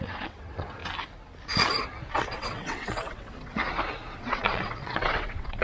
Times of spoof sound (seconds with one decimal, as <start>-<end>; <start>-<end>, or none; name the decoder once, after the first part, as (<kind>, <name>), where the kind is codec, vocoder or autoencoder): 0.0-0.8 (vocoder, WaveNeXt); 2.1-3.6; 4.2-5.6